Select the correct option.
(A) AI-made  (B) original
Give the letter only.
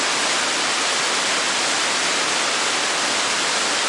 B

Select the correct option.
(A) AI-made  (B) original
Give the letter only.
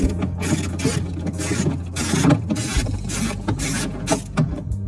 B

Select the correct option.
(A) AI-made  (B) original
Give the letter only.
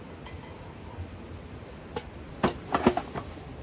B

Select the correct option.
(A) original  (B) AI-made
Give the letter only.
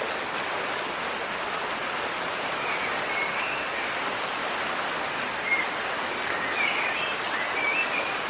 A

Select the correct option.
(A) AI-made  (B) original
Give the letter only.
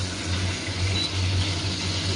A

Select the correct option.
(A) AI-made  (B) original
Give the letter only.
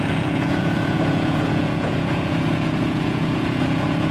A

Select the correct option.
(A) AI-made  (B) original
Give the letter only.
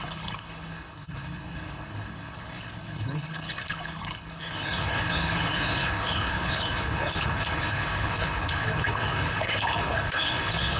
A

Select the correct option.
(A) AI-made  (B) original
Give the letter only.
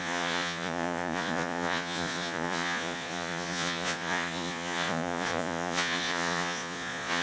A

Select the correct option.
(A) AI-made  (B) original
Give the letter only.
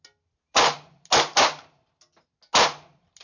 B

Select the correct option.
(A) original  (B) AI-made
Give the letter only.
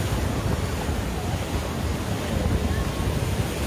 A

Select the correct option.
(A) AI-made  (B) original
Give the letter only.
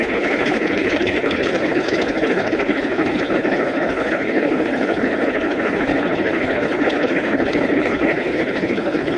A